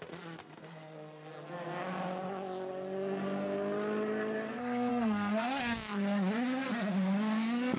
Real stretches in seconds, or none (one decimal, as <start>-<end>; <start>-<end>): 0.0-0.4; 1.3-4.9; 5.6-7.8